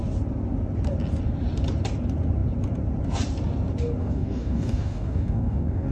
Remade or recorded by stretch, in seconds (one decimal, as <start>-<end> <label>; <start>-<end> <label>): 0.0-4.0 recorded; 4.0-5.9 remade